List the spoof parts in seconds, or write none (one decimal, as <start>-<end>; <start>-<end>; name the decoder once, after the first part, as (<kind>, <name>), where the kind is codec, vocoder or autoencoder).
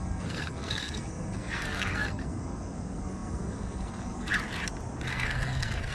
0.0-4.3 (codec, SNAC); 5.1-5.9